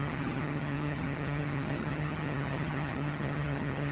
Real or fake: fake